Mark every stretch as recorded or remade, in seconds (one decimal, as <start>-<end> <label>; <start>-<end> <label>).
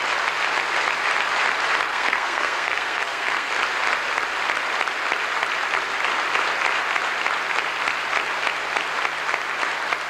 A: 0.0-1.9 recorded; 1.9-3.5 remade; 3.5-10.1 recorded